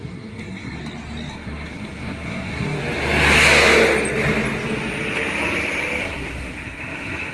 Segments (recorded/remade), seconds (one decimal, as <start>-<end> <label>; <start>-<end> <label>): 0.0-0.8 remade; 0.8-1.3 recorded; 1.3-2.8 remade; 2.8-6.0 recorded; 6.0-7.3 remade